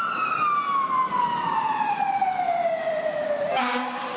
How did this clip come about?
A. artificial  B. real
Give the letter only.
A